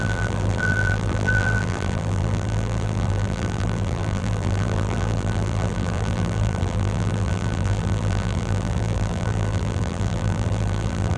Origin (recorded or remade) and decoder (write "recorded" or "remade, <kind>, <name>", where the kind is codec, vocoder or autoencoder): remade, vocoder, BigVGAN v2